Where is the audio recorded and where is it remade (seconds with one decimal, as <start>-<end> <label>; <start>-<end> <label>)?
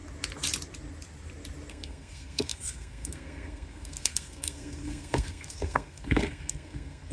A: 0.0-1.7 recorded; 1.7-7.1 remade